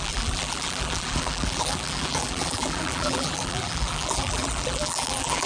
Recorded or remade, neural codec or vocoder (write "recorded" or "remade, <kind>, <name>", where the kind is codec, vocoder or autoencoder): remade, vocoder, BigVGAN v2